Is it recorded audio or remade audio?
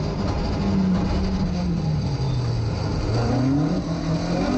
recorded